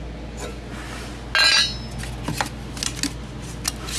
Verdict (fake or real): real